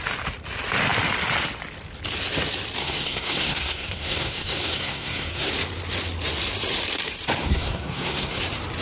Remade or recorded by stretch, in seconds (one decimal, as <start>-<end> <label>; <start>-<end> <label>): 0.0-2.8 recorded; 2.8-5.5 remade; 5.5-7.4 recorded; 7.4-8.4 remade; 8.4-8.8 recorded